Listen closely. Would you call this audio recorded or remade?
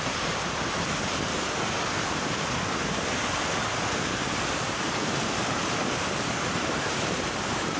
remade